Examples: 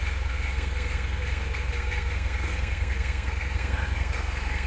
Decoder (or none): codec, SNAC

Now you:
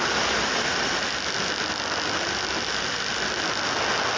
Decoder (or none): none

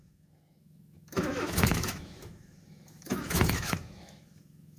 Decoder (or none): autoencoder, DAC-VAE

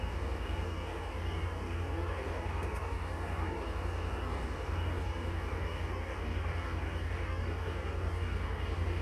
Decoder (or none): codec, DAC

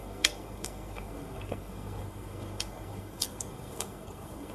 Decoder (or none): codec, SNAC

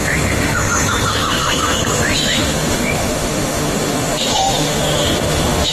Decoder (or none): autoencoder, DAC-VAE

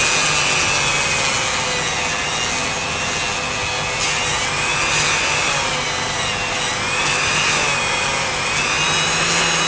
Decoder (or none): none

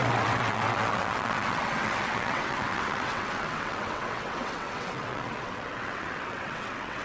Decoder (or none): vocoder, WaveNeXt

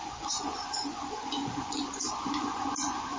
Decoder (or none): vocoder, Vocos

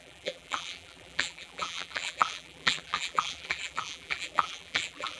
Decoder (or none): vocoder, BigVGAN v2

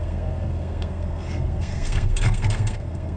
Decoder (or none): codec, SNAC